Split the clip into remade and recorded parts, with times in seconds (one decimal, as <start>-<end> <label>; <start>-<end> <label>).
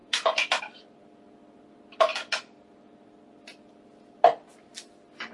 0.0-0.6 remade; 0.6-5.3 recorded